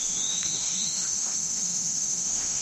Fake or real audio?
fake